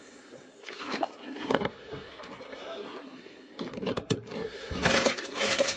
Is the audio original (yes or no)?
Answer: no